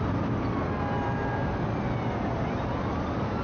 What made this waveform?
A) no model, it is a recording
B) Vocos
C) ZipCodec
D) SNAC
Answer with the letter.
A